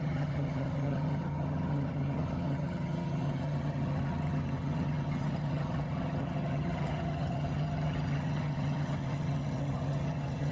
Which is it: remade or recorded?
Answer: remade